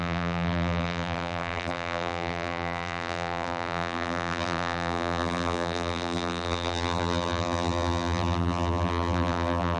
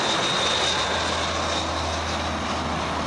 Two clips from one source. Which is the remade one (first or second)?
first